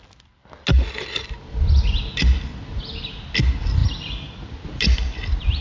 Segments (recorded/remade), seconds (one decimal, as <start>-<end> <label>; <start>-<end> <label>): 0.0-5.6 recorded